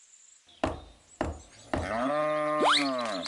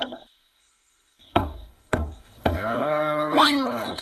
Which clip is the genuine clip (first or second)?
first